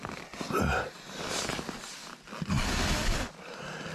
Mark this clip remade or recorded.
recorded